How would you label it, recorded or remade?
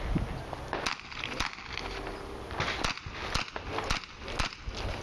recorded